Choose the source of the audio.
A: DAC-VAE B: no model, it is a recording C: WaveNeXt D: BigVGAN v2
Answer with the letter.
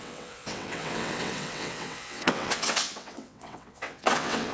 C